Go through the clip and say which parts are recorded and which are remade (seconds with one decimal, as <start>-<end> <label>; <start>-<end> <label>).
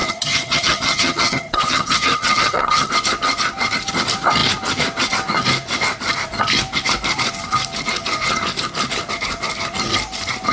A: 0.0-2.9 remade; 2.9-10.5 recorded